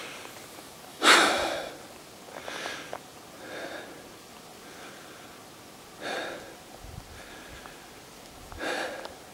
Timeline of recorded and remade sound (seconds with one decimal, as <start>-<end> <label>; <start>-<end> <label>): 0.0-0.9 recorded; 0.9-1.7 remade; 1.7-9.3 recorded

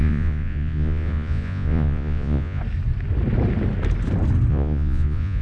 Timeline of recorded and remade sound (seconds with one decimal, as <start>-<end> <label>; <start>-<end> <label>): 0.0-2.6 remade; 2.6-4.5 recorded; 4.5-5.4 remade

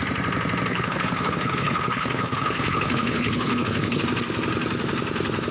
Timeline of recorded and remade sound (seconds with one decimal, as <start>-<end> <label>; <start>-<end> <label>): 0.0-0.7 recorded; 0.7-4.0 remade; 4.0-5.5 recorded

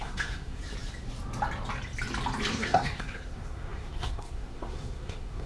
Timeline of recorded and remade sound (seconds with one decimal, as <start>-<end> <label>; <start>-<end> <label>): 0.0-0.6 remade; 0.6-2.5 recorded; 2.5-5.5 remade

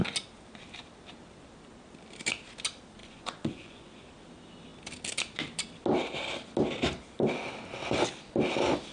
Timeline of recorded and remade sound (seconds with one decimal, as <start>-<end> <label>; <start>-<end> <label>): 0.0-3.0 recorded; 3.0-3.9 remade; 3.9-8.9 recorded

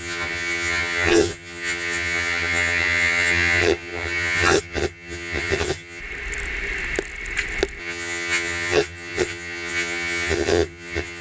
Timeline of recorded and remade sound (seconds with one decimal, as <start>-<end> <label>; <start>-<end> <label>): 0.0-6.0 remade; 6.0-7.8 recorded; 7.8-11.2 remade